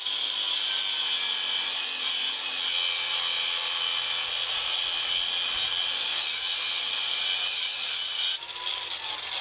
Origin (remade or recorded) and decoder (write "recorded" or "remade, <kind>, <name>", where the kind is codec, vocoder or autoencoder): recorded